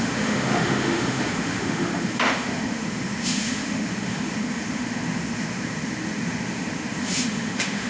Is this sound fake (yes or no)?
yes